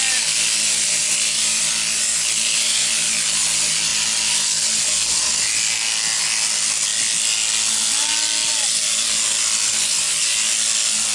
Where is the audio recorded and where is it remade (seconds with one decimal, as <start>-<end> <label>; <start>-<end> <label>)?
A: 0.0-11.1 recorded